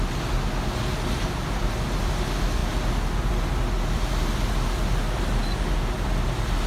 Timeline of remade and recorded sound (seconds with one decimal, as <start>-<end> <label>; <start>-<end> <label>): 0.0-6.7 recorded

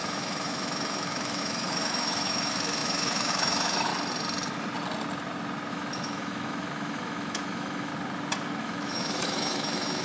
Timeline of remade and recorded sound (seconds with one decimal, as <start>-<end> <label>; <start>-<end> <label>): 0.0-3.9 remade; 3.9-5.7 recorded; 5.7-7.9 remade; 7.9-8.6 recorded; 8.6-10.0 remade

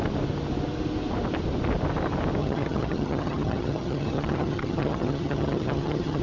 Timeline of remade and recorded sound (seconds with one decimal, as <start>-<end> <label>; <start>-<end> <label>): 0.0-2.4 recorded; 2.4-6.2 remade

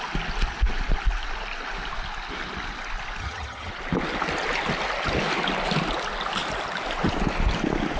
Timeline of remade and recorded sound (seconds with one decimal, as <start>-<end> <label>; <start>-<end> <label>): 0.0-3.2 recorded; 3.2-3.7 remade; 3.7-8.0 recorded

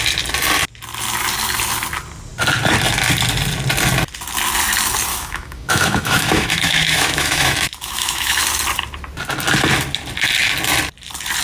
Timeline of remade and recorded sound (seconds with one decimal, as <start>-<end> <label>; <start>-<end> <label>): 0.0-5.1 recorded; 5.1-8.4 remade; 8.4-11.4 recorded

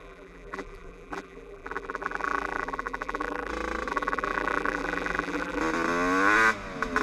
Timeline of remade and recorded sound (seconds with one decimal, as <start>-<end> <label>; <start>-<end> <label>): 0.0-3.5 remade; 3.5-3.9 recorded; 3.9-5.6 remade; 5.6-7.0 recorded

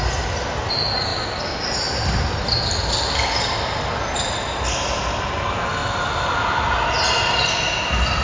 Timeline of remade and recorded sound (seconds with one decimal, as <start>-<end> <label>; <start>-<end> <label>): 0.0-8.2 recorded

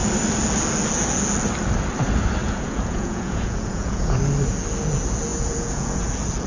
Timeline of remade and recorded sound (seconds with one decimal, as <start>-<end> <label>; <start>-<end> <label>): 0.0-2.4 recorded; 2.4-4.2 remade; 4.2-5.3 recorded; 5.3-6.1 remade; 6.1-6.5 recorded